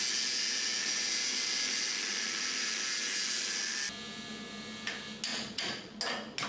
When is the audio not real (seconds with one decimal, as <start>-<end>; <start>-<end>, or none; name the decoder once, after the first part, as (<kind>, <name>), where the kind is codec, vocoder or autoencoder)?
5.3-6.0 (vocoder, Vocos)